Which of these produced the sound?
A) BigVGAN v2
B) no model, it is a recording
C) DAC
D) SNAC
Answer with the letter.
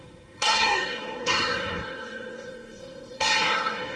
D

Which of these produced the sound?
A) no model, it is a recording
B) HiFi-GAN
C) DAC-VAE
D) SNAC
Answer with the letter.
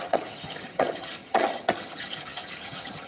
B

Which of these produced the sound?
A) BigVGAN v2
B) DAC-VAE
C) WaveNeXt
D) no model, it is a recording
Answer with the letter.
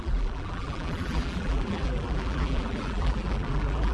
A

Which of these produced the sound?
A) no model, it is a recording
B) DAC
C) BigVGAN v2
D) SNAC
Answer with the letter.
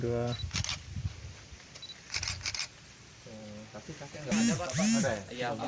A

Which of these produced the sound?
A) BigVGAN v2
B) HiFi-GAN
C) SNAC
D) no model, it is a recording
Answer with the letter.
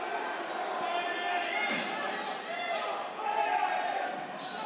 D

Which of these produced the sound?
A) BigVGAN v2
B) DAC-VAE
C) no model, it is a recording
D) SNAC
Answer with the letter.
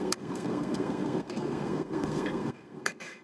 D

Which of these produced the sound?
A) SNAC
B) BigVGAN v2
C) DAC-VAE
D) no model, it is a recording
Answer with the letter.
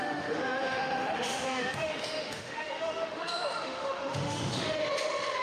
C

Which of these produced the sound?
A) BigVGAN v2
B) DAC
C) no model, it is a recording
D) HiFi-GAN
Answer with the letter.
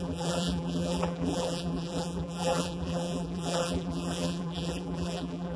A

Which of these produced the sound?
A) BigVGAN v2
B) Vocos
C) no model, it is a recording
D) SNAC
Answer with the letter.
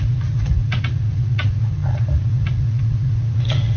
B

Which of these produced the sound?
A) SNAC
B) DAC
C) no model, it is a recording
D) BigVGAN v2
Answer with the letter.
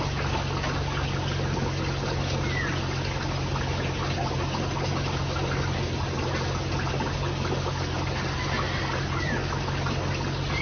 C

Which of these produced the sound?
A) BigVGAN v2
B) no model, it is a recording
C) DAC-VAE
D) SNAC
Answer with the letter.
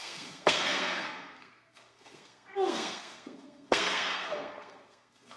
D